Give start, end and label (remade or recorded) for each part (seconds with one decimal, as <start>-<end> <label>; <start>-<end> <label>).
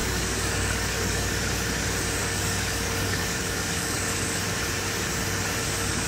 0.0-1.5 remade; 1.5-2.2 recorded; 2.2-4.4 remade; 4.4-6.1 recorded